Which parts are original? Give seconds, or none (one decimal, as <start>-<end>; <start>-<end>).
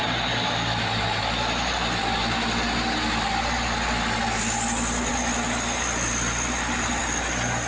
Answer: 0.0-7.7